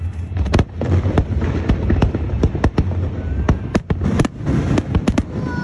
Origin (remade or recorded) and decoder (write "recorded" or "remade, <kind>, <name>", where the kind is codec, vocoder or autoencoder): recorded